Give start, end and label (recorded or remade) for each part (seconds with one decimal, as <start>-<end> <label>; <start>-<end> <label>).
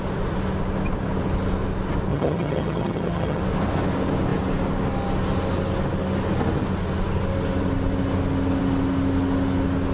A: 0.0-2.1 recorded; 2.1-3.4 remade; 3.4-9.9 recorded